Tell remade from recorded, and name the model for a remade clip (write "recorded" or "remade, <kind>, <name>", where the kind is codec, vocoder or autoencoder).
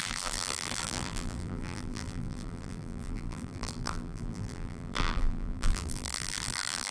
remade, vocoder, BigVGAN v2